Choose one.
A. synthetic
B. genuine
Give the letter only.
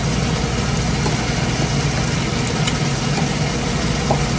B